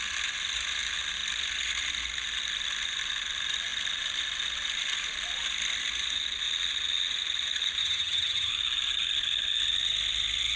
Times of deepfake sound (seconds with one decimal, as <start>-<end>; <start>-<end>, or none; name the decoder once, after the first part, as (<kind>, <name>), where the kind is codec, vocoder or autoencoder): 7.8-8.5 (vocoder, HiFi-GAN)